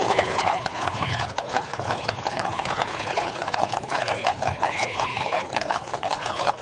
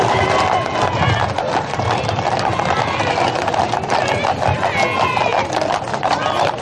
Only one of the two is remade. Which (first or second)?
first